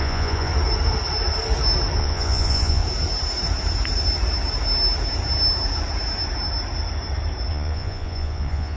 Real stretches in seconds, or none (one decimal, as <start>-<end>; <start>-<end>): 0.5-2.0; 2.8-7.5